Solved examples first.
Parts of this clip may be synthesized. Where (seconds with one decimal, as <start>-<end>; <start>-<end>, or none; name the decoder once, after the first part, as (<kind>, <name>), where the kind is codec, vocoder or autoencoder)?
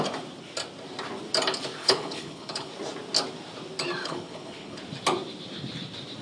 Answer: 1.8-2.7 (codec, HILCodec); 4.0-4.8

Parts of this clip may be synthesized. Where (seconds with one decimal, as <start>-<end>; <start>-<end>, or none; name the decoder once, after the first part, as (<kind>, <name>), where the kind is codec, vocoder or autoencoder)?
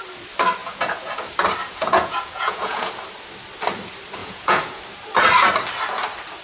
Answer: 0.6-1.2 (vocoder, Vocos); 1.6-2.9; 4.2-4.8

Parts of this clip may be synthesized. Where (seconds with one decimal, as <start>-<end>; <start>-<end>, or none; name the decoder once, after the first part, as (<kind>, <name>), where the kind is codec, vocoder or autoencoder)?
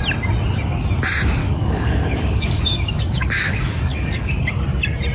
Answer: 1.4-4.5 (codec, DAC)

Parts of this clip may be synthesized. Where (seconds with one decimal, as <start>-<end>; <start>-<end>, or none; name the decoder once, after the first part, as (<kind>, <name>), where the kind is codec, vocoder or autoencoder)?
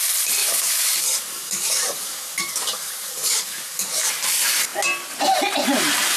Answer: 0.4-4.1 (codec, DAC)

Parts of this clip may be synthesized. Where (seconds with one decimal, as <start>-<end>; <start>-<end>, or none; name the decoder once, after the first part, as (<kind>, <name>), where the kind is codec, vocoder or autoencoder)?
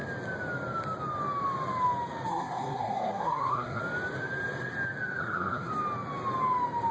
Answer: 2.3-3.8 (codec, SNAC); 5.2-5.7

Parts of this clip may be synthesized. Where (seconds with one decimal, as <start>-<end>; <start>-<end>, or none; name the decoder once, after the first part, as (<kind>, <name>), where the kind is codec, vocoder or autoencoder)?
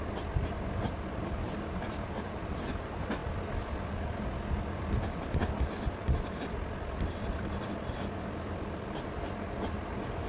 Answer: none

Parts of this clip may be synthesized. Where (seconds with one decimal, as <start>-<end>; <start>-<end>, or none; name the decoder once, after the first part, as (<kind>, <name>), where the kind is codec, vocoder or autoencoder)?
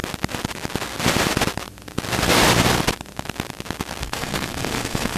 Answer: 4.0-5.2 (codec, SNAC)